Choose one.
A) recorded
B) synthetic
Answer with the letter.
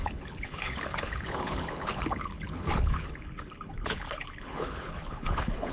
B